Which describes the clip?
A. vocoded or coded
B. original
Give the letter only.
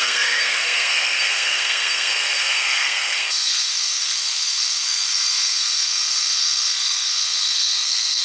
A